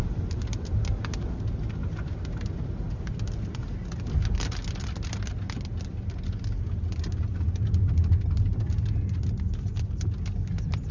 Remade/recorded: recorded